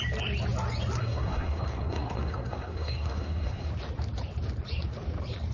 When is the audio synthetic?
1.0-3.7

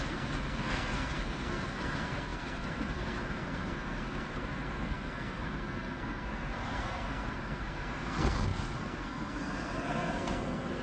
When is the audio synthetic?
0.0-10.8

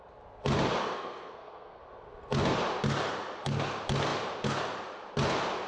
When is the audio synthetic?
0.8-1.8